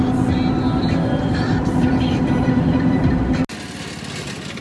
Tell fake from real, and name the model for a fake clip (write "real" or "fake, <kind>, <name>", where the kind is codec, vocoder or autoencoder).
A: real